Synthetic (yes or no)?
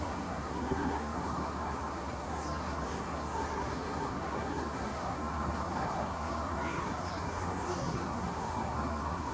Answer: yes